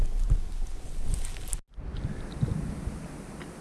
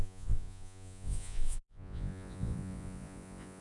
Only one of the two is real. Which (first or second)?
first